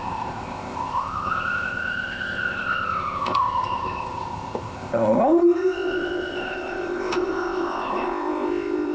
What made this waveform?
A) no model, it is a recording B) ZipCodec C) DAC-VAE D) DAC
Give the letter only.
B